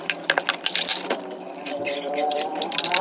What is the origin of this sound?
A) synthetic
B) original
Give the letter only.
A